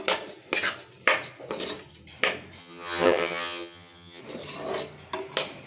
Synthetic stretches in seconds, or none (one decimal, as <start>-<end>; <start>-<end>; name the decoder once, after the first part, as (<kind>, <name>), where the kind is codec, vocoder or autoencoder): 2.6-4.2 (vocoder, HiFi-GAN)